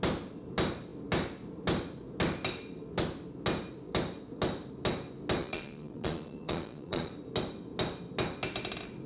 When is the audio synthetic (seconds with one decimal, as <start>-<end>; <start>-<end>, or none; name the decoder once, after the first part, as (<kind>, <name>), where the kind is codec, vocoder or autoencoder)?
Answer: 5.4-7.1 (vocoder, Vocos)